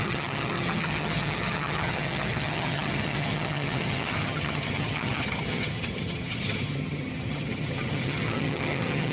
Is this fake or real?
fake